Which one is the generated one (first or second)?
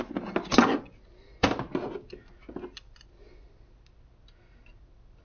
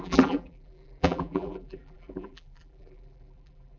second